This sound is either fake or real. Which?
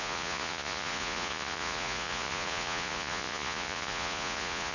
fake